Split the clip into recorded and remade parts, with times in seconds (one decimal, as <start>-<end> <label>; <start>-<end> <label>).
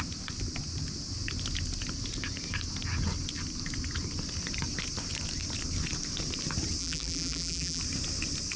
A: 0.0-6.8 recorded; 6.8-7.8 remade; 7.8-8.6 recorded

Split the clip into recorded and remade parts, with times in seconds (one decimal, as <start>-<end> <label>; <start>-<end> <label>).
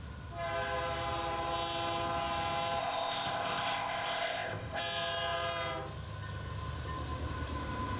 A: 0.0-2.8 recorded; 2.8-4.8 remade; 4.8-8.0 recorded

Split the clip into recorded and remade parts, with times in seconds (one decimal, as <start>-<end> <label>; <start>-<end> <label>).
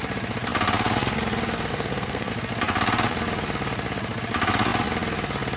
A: 0.0-1.7 recorded; 1.7-2.3 remade; 2.3-5.6 recorded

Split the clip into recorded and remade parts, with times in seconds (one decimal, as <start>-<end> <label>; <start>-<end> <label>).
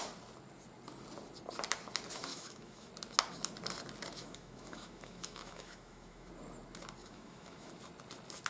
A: 0.0-2.3 recorded; 2.3-2.9 remade; 2.9-4.2 recorded; 4.2-6.3 remade; 6.3-7.0 recorded; 7.0-7.7 remade; 7.7-8.5 recorded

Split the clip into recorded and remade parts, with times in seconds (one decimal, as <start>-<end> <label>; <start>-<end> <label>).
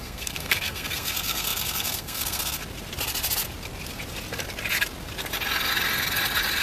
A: 0.0-2.6 remade; 2.6-6.6 recorded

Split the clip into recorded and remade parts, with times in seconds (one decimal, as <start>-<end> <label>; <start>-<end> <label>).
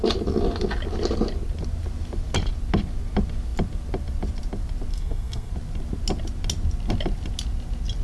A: 0.0-4.9 recorded; 4.9-5.5 remade; 5.5-8.0 recorded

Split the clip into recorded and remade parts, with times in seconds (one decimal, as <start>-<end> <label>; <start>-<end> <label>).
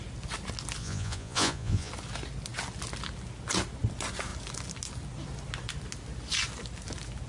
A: 0.0-0.8 recorded; 0.8-1.9 remade; 1.9-7.3 recorded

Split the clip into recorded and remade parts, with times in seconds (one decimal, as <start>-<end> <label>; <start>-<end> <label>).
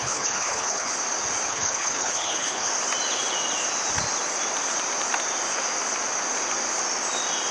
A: 0.0-0.9 remade; 0.9-1.5 recorded; 1.5-2.7 remade; 2.7-7.5 recorded